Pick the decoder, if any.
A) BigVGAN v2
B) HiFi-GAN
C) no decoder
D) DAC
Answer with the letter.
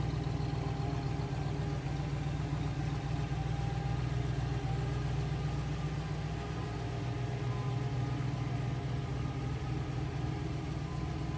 C